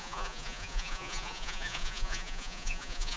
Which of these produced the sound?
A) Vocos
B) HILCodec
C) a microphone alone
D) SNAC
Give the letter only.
A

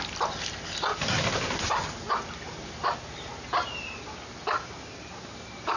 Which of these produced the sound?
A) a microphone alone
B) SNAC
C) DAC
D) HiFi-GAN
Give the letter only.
A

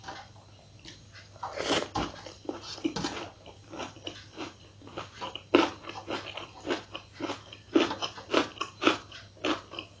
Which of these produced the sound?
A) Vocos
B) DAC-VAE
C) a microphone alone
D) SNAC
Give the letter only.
C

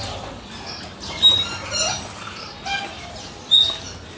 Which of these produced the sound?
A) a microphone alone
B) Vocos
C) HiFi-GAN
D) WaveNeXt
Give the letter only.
A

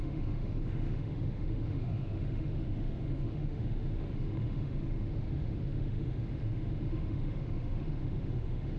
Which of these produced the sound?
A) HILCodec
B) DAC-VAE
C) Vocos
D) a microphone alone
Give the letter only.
B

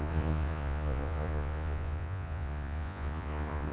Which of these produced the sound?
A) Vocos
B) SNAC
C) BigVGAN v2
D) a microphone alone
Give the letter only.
A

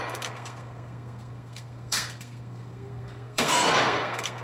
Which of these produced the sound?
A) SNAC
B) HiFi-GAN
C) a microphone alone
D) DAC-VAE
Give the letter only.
A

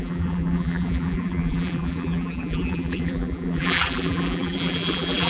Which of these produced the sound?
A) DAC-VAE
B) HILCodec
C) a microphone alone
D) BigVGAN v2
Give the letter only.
D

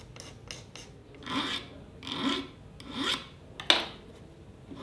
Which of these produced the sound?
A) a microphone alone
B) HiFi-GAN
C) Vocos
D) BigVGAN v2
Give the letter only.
A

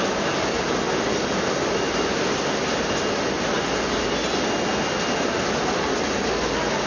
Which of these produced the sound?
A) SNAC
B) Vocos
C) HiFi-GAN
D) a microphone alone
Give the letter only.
D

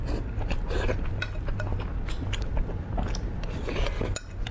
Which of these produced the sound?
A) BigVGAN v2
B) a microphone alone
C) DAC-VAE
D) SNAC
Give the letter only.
B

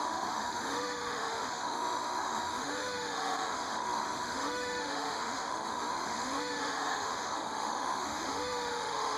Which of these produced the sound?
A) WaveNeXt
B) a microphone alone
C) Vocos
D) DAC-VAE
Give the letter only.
D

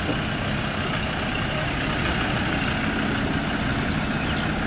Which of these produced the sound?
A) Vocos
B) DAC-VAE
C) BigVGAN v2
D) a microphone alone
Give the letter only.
D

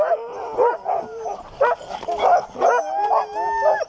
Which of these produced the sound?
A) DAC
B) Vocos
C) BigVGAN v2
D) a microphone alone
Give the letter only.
D